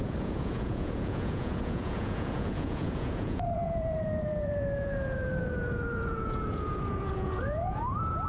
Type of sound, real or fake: fake